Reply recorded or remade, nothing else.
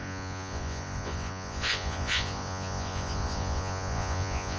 remade